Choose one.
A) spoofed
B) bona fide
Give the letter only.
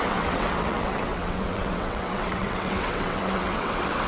A